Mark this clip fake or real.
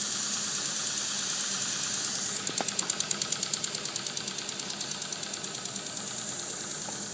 real